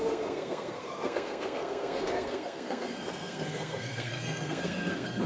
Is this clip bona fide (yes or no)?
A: no